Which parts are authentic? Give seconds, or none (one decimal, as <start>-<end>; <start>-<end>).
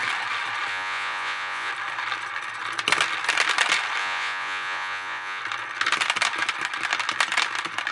0.0-0.7; 1.7-4.0; 5.4-7.9